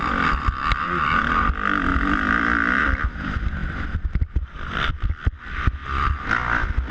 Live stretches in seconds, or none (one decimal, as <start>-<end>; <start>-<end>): 0.0-1.9; 2.8-3.6; 4.9-5.8